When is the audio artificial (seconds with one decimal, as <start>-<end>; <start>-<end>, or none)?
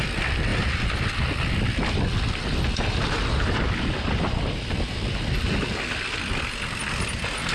none